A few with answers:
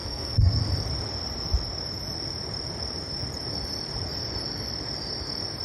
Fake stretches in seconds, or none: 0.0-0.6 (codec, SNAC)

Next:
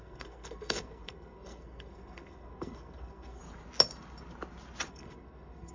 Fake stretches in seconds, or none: 0.0-3.4 (codec, SNAC); 4.9-5.7

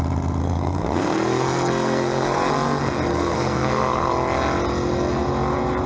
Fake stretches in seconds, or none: 0.4-2.5 (codec, SNAC); 3.1-4.1

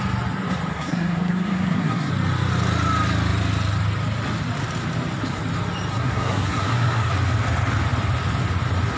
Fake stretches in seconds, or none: 0.7-2.1 (codec, SNAC); 5.9-7.1